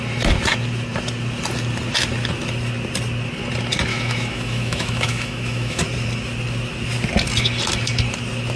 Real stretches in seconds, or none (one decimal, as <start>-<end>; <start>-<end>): 0.0-3.9; 5.8-8.6